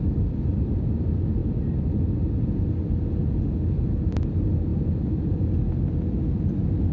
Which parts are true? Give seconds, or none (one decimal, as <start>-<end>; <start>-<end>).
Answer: 0.0-6.9